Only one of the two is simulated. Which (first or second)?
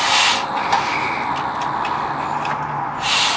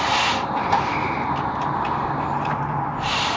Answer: second